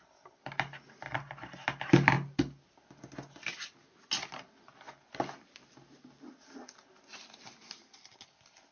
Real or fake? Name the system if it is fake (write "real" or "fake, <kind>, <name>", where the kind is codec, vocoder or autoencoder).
real